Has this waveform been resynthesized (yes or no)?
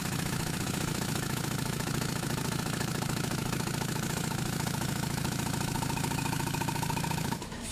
yes